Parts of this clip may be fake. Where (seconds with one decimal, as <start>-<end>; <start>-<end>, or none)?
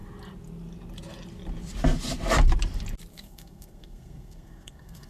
3.1-5.1